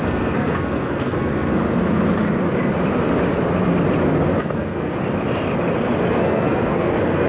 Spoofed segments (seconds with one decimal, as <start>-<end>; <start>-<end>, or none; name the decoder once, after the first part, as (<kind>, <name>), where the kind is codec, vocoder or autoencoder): 0.0-1.6 (codec, SNAC); 4.4-5.0; 6.1-7.3